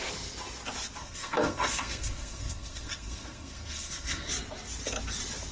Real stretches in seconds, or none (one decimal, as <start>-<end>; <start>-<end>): 0.0-1.0; 4.3-5.5